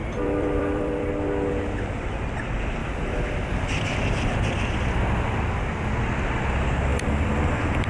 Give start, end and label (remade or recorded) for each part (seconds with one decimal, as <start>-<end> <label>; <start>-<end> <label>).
0.0-1.1 remade; 1.1-2.8 recorded; 2.8-5.9 remade; 5.9-6.9 recorded; 6.9-7.9 remade